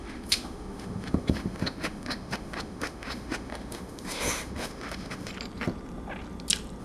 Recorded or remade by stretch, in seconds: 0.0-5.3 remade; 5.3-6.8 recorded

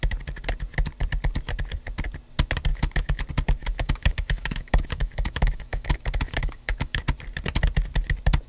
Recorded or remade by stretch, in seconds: 0.0-2.7 recorded; 2.7-3.2 remade; 3.2-3.6 recorded; 3.6-7.0 remade; 7.0-8.5 recorded

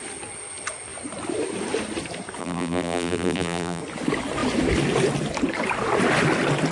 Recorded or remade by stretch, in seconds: 0.0-2.4 recorded; 2.4-3.8 remade; 3.8-6.7 recorded

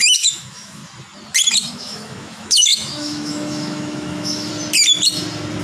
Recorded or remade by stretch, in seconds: 0.0-0.8 remade; 0.8-1.7 recorded; 1.7-4.5 remade; 4.5-5.6 recorded

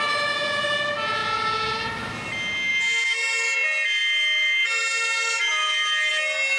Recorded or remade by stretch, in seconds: 0.0-6.6 recorded

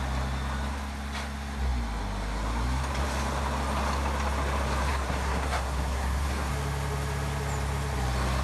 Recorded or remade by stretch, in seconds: 0.0-4.9 recorded; 4.9-6.5 remade; 6.5-8.4 recorded

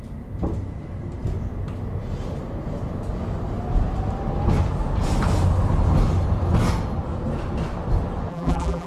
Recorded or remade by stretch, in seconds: 0.0-8.3 recorded; 8.3-8.9 remade

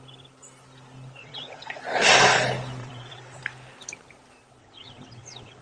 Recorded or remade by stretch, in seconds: 0.0-1.2 recorded; 1.2-1.8 remade; 1.8-2.8 recorded; 2.8-3.4 remade; 3.4-4.6 recorded; 4.6-5.6 remade